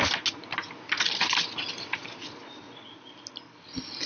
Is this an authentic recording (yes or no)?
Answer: yes